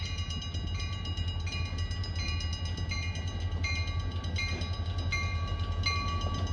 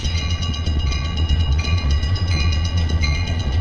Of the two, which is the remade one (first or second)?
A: second